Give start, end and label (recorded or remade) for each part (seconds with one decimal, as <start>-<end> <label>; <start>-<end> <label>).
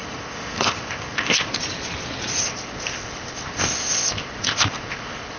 0.0-1.6 remade; 1.6-2.4 recorded; 2.4-5.4 remade